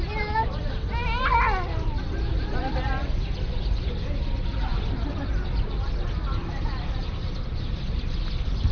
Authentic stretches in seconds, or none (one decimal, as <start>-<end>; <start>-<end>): 0.0-8.7